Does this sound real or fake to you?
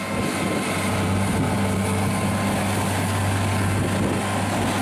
real